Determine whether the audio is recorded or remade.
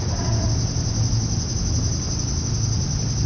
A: recorded